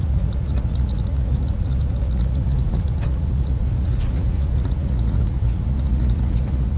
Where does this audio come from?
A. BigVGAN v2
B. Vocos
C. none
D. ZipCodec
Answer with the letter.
B